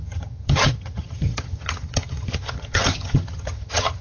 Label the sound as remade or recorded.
remade